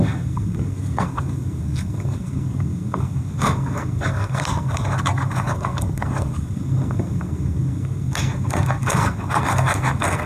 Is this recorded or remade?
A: remade